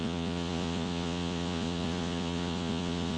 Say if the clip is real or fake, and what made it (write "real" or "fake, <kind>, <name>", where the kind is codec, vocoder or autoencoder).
fake, vocoder, Vocos